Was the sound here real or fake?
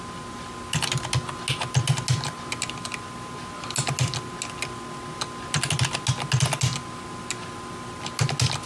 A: real